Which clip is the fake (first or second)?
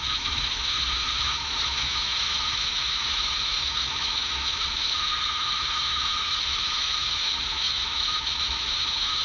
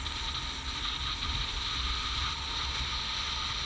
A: first